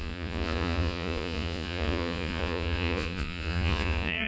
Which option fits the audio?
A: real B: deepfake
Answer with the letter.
B